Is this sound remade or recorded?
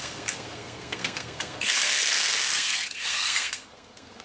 remade